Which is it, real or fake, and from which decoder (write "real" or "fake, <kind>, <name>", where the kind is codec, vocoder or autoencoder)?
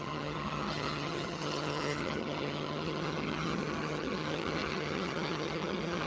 fake, vocoder, HiFi-GAN